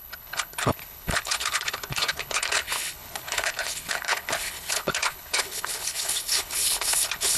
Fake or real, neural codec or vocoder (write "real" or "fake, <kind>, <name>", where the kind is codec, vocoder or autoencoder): fake, codec, HILCodec